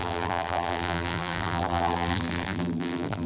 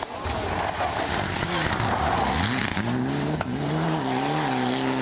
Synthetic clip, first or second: first